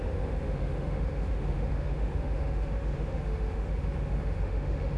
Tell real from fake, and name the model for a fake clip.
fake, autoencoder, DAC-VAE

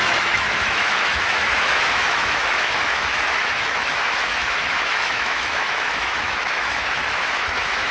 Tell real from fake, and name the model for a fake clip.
fake, autoencoder, DAC-VAE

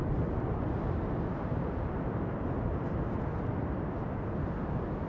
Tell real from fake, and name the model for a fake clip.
real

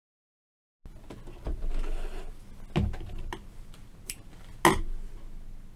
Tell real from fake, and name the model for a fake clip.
real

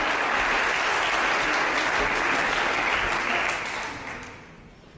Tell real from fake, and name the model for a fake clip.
real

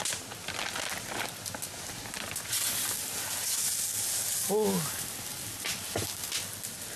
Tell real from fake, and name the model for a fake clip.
real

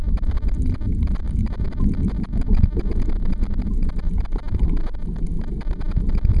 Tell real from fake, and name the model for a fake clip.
real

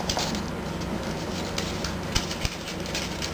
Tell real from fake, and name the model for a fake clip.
real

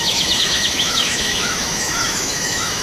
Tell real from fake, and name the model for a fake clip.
fake, autoencoder, DAC-VAE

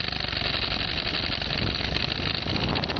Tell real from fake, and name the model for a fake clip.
real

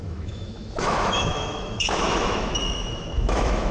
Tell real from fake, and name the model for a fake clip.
fake, autoencoder, DAC-VAE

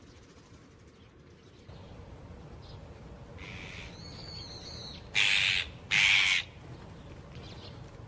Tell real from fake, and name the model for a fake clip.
real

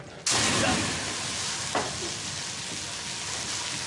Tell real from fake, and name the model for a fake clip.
real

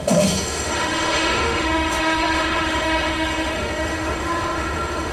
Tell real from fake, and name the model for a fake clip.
fake, autoencoder, DAC-VAE